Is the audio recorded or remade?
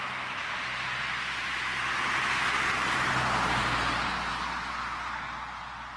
recorded